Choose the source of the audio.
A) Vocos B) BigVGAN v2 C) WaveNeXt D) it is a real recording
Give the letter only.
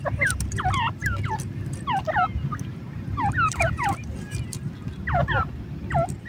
B